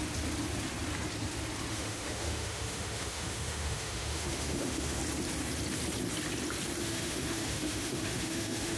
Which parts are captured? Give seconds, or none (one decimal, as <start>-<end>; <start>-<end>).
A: 0.0-1.7; 5.0-6.8